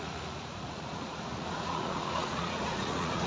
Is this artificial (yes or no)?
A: yes